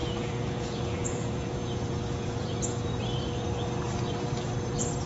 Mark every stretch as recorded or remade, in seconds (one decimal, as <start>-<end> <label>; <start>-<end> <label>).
0.0-3.0 remade; 3.0-5.1 recorded